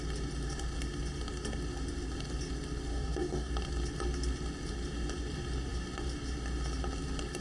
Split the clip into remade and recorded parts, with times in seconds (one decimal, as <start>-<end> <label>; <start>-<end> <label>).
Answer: 0.0-2.9 recorded; 2.9-3.5 remade; 3.5-7.4 recorded